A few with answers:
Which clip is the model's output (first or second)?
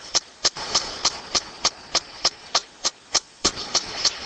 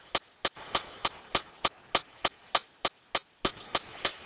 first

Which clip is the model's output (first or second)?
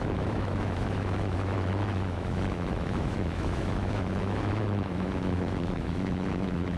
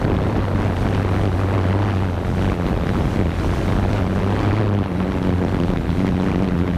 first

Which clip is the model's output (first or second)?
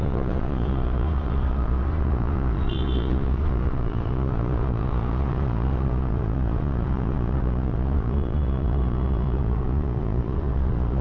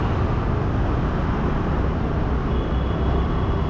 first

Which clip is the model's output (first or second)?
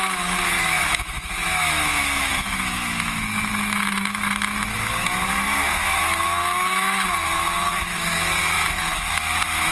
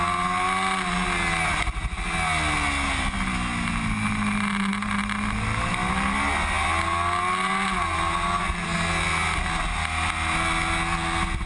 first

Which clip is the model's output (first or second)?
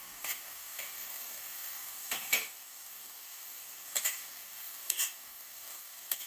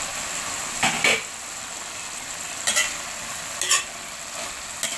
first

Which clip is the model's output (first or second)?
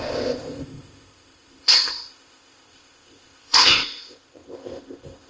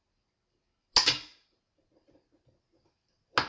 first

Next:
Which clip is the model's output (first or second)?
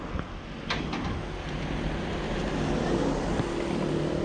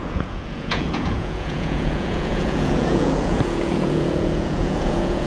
second